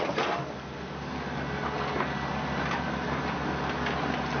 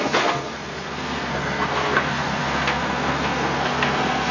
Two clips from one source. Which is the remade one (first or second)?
second